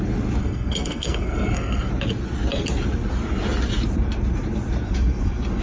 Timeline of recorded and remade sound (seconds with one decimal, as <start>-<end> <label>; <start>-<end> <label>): 0.0-0.4 recorded; 0.4-1.9 remade; 1.9-5.6 recorded